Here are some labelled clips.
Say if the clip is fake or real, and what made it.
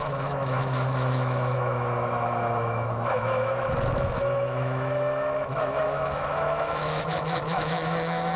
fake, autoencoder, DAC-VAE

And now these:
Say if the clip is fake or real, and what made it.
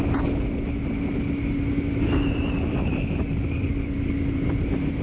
real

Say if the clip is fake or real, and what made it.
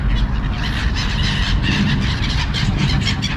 real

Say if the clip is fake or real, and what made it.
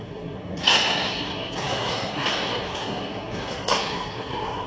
fake, codec, SNAC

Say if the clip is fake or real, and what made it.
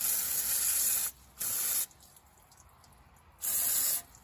real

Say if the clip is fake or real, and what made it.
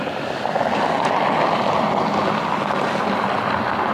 real